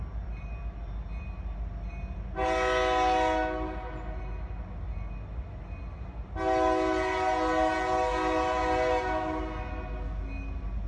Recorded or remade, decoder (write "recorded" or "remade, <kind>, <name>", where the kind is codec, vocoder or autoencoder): recorded